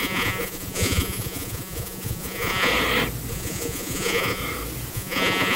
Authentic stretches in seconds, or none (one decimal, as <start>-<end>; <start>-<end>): 2.7-3.3; 4.4-4.9